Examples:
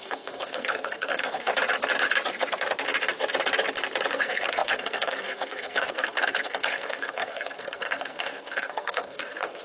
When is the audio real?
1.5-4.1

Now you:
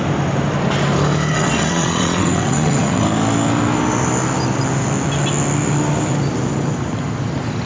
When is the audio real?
0.0-1.3; 3.0-7.7

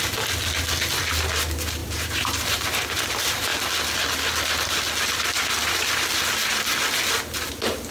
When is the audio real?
0.0-1.8; 3.0-7.9